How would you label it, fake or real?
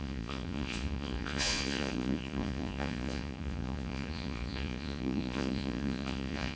fake